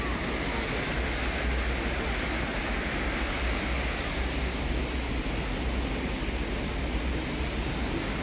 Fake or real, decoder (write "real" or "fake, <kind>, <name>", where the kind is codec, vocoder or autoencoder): real